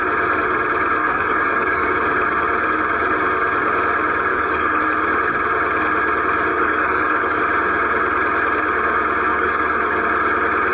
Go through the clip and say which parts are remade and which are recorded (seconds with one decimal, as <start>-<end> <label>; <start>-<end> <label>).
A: 0.0-1.0 recorded; 1.0-1.9 remade; 1.9-4.3 recorded; 4.3-4.8 remade; 4.8-6.5 recorded; 6.5-7.4 remade; 7.4-9.3 recorded; 9.3-10.0 remade; 10.0-10.7 recorded